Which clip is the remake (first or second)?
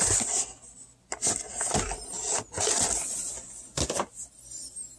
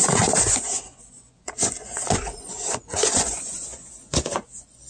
second